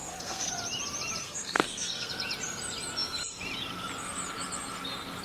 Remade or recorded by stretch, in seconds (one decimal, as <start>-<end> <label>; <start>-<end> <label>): 0.0-0.5 remade; 0.5-1.2 recorded; 1.2-2.1 remade; 2.1-5.2 recorded